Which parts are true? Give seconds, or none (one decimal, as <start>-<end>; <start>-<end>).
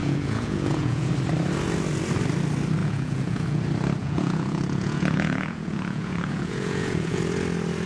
1.1-2.8; 3.6-4.0; 7.2-7.9